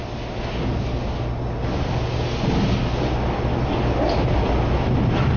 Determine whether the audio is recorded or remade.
recorded